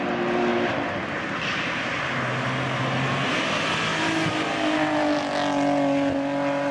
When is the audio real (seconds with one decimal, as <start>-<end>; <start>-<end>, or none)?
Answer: 0.0-6.7